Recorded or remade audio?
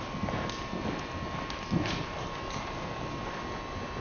recorded